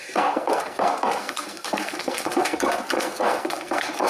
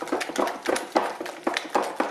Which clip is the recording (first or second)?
second